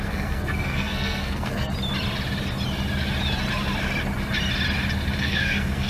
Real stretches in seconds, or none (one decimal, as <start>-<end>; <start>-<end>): 1.7-5.2